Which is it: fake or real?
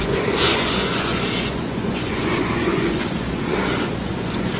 fake